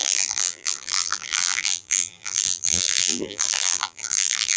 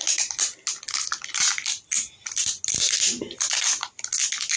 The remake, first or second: first